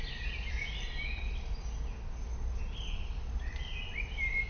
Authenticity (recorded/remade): recorded